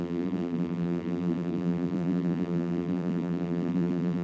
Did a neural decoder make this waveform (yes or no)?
yes